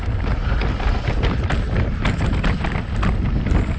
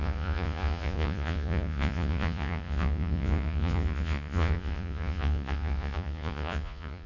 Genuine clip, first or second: first